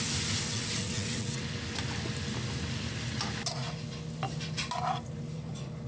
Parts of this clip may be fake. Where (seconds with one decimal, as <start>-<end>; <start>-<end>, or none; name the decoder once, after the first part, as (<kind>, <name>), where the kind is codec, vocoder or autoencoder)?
0.5-1.4 (vocoder, WaveNeXt)